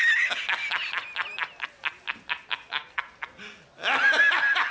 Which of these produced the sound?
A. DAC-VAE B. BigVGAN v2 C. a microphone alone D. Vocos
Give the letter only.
C